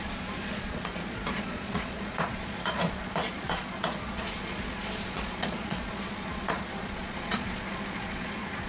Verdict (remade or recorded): remade